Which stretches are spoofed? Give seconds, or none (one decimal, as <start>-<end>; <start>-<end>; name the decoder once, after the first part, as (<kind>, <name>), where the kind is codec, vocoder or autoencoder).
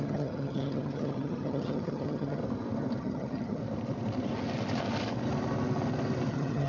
0.0-2.4 (vocoder, HiFi-GAN); 3.0-3.6; 6.3-6.7